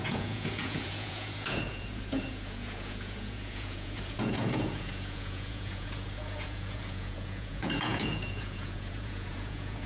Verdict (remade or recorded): remade